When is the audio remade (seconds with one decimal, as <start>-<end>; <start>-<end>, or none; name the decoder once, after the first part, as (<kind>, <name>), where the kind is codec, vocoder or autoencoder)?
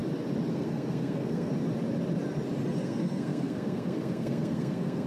0.5-1.5 (codec, SNAC); 2.8-5.1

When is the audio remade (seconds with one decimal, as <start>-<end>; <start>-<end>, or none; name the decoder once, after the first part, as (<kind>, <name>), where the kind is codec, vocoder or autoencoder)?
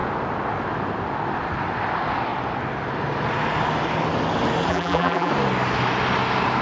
4.7-5.3 (vocoder, BigVGAN v2)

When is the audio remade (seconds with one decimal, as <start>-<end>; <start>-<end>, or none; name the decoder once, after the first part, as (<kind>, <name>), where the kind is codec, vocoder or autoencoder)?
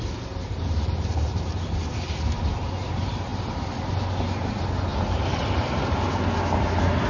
0.4-1.6 (vocoder, BigVGAN v2); 4.9-5.8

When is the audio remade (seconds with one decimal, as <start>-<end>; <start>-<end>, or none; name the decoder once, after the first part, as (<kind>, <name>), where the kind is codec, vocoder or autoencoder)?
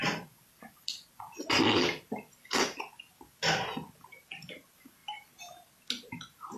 none